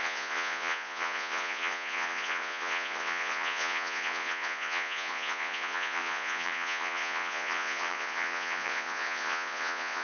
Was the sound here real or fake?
fake